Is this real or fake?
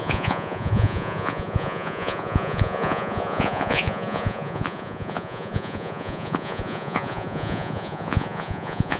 fake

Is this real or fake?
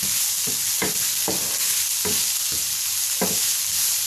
real